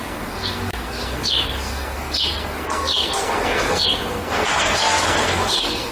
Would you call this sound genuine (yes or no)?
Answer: no